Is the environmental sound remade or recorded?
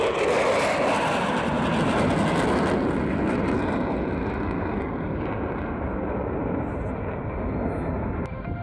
recorded